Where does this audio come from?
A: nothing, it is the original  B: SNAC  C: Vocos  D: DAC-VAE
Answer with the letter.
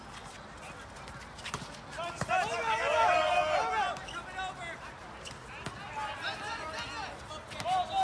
A